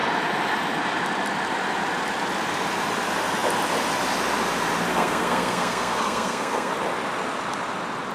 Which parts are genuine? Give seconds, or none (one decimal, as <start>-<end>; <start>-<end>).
0.0-4.9; 6.7-8.1